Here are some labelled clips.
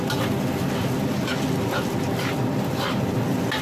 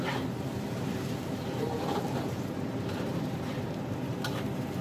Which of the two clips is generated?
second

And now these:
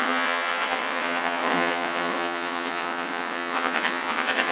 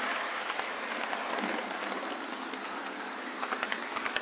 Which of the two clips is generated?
first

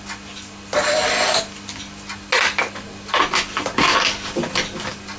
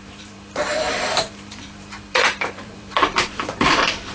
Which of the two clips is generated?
second